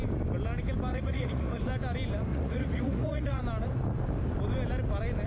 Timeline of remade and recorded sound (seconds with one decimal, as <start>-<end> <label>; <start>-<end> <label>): 0.0-0.9 recorded; 0.9-1.6 remade; 1.6-2.3 recorded; 2.3-3.4 remade; 3.4-5.3 recorded